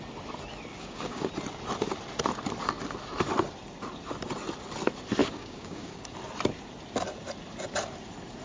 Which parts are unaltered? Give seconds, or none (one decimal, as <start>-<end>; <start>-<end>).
0.0-0.7; 1.3-5.2; 6.0-8.4